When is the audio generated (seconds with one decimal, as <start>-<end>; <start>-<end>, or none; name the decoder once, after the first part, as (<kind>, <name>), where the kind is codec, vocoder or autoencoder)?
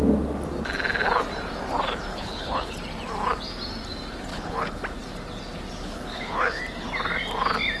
2.1-2.8 (codec, HILCodec); 4.3-4.8; 5.8-6.6